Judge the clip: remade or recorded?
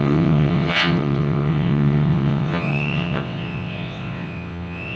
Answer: remade